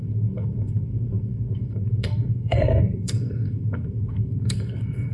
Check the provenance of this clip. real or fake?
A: fake